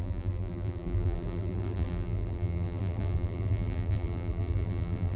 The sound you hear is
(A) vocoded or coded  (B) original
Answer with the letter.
A